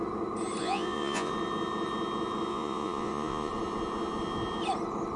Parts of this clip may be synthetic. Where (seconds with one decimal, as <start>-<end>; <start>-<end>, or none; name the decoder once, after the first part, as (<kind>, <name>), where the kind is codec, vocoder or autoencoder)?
0.6-1.3 (vocoder, Vocos); 2.5-3.5

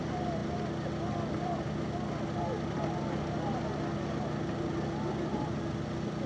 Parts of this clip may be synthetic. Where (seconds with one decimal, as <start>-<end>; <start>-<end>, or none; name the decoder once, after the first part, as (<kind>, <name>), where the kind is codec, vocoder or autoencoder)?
none

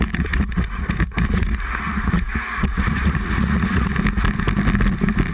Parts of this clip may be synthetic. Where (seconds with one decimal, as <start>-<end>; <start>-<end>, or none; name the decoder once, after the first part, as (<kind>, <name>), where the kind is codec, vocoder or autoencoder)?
0.0-3.9 (vocoder, Vocos)

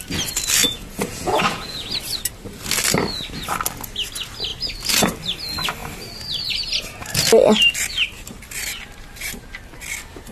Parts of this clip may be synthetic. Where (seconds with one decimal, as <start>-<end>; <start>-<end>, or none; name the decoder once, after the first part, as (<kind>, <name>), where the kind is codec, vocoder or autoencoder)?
0.6-1.9 (vocoder, Vocos)